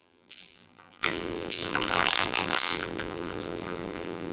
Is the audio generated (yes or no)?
yes